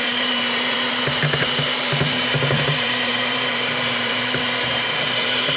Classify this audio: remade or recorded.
remade